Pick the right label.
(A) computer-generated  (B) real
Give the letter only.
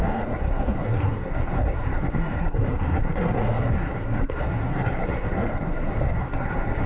A